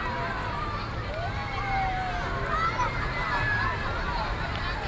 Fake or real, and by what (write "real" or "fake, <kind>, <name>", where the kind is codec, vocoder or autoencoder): real